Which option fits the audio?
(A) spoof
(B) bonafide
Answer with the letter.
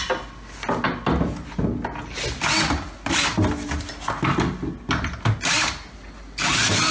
B